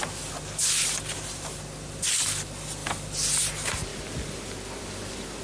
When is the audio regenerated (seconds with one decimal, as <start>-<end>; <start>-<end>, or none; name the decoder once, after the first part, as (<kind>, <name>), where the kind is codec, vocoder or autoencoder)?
none